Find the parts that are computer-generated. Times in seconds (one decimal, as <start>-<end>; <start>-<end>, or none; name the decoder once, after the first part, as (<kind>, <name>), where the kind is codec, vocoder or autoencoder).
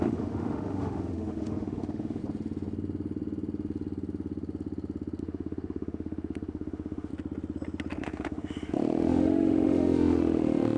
0.0-2.2 (autoencoder, DAC-VAE); 5.2-7.1; 8.0-10.8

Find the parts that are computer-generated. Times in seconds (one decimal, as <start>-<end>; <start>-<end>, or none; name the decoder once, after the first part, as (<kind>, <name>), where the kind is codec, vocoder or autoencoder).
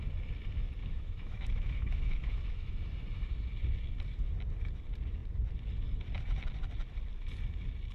0.8-2.7 (autoencoder, DAC-VAE)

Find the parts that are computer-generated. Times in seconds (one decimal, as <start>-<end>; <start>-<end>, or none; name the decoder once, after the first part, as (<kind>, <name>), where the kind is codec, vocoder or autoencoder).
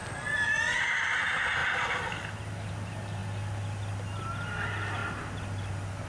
none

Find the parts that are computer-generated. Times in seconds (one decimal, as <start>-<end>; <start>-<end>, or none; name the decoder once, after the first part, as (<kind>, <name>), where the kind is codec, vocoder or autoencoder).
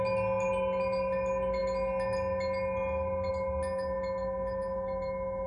none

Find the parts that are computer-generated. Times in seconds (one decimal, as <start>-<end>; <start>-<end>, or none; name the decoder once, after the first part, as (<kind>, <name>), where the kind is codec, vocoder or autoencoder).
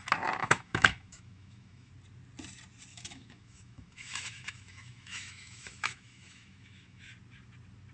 0.4-1.9 (autoencoder, DAC-VAE); 2.9-7.0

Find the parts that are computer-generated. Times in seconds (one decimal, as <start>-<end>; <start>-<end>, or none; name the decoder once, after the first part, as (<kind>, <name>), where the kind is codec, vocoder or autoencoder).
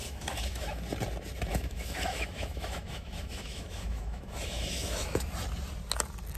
0.0-0.8 (autoencoder, DAC-VAE); 1.5-5.3